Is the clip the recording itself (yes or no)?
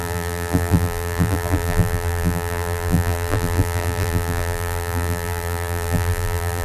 no